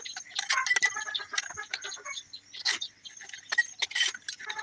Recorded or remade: recorded